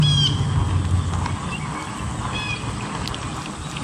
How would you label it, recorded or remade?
recorded